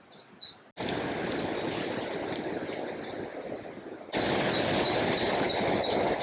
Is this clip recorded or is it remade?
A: recorded